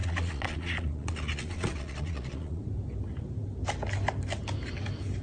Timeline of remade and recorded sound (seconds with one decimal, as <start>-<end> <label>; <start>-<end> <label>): 0.0-2.6 remade; 2.6-5.2 recorded